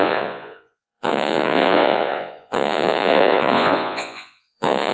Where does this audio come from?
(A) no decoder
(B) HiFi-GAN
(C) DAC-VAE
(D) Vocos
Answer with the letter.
D